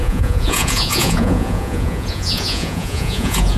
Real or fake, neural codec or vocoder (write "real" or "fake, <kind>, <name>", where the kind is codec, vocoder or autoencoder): fake, vocoder, Vocos